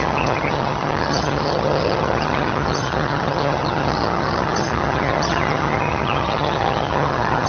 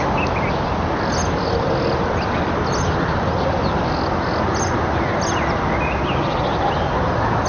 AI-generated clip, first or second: first